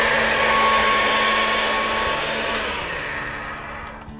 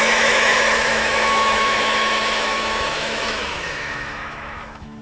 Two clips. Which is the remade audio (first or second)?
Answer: second